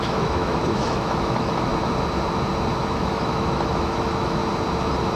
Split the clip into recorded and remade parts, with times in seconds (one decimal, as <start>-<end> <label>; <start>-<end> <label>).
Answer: 0.0-1.7 remade; 1.7-2.8 recorded; 2.8-4.4 remade; 4.4-5.2 recorded